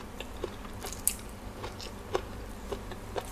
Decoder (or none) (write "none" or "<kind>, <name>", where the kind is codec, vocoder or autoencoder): none